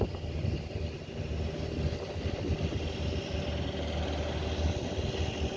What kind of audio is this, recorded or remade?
recorded